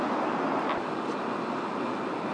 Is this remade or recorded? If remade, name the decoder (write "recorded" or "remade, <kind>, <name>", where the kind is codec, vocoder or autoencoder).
recorded